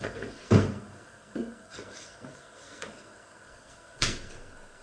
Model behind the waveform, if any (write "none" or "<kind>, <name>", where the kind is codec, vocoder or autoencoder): codec, SNAC